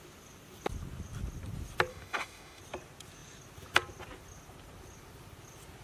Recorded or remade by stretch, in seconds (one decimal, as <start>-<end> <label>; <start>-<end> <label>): 0.0-1.9 recorded; 1.9-2.6 remade; 2.6-5.8 recorded